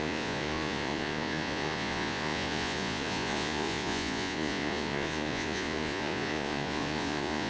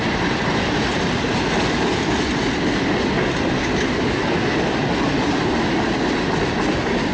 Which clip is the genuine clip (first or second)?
second